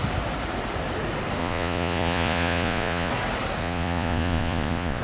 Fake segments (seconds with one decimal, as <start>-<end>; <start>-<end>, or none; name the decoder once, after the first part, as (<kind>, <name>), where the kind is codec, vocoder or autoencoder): 1.4-3.1 (vocoder, Vocos); 3.6-5.0